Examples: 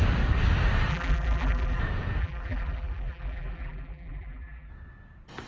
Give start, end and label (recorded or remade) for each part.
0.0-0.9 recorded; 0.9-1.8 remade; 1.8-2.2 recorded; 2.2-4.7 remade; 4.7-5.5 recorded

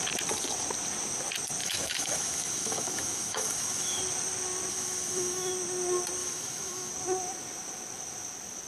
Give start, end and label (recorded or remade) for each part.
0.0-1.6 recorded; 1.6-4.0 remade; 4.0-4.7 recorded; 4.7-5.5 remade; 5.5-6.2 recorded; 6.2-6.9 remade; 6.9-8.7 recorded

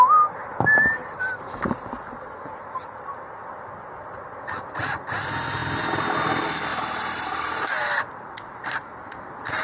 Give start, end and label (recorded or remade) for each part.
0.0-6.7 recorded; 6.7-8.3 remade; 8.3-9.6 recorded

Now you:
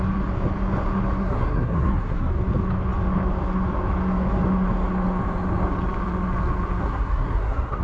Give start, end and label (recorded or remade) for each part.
0.0-1.2 recorded; 1.2-2.3 remade; 2.3-6.8 recorded; 6.8-7.8 remade

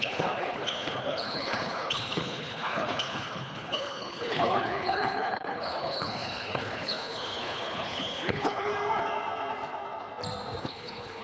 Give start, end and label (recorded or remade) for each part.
0.0-8.7 remade; 8.7-10.6 recorded; 10.6-11.2 remade

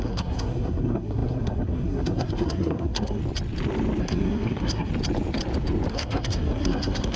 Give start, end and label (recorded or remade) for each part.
0.0-3.2 remade; 3.2-4.0 recorded; 4.0-4.9 remade; 4.9-5.9 recorded; 5.9-7.2 remade

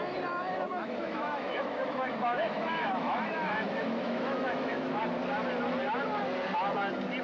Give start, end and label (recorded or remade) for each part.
0.0-0.7 recorded; 0.7-5.0 remade; 5.0-7.2 recorded

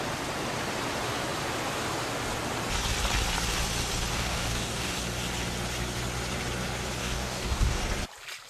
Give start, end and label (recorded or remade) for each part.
0.0-4.1 recorded; 4.1-4.9 remade; 4.9-7.0 recorded; 7.0-7.8 remade; 7.8-8.5 recorded